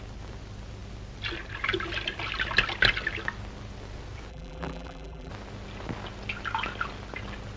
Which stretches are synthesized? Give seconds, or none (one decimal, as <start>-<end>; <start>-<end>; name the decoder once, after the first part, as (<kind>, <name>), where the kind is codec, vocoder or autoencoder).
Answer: 4.3-5.3 (vocoder, BigVGAN v2)